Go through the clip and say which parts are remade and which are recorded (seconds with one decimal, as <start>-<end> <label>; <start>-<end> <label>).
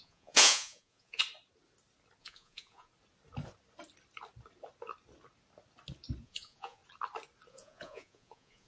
0.0-1.2 remade; 1.2-2.2 recorded; 2.2-2.9 remade; 2.9-6.2 recorded; 6.2-6.8 remade; 6.8-7.5 recorded; 7.5-8.7 remade